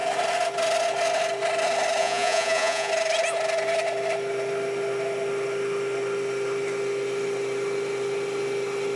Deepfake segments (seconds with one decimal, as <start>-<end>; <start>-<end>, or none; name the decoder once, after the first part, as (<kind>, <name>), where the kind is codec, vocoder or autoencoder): 2.0-2.9 (vocoder, Vocos)